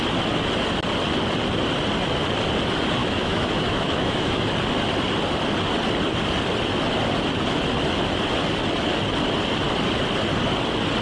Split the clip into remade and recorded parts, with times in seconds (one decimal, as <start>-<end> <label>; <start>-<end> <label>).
0.0-3.0 recorded; 3.0-4.4 remade; 4.4-11.0 recorded